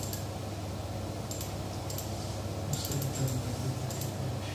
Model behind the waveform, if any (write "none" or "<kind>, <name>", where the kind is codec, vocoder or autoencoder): none